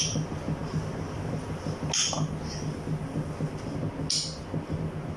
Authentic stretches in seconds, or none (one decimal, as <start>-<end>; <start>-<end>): 0.0-5.2